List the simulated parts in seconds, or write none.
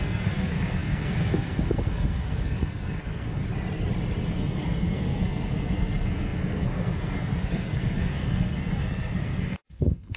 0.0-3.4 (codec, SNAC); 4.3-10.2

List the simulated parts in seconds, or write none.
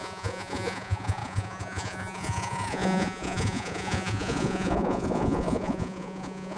0.0-6.6 (vocoder, Vocos)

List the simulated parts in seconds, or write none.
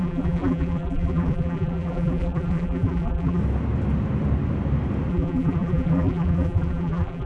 0.0-3.4 (vocoder, BigVGAN v2); 5.1-7.3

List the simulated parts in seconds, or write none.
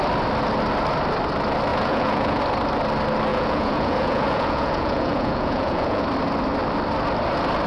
1.7-2.4 (vocoder, Vocos); 3.3-6.0